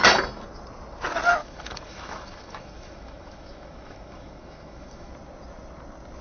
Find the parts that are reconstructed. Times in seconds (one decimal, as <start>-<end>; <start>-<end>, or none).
1.4-5.1